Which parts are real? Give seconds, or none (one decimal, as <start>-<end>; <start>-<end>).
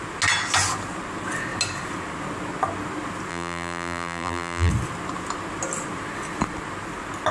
0.0-3.3; 4.7-7.3